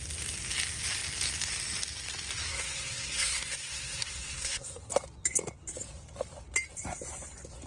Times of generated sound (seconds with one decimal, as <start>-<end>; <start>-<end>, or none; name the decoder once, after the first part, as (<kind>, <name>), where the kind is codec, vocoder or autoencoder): 2.5-4.9 (codec, SNAC)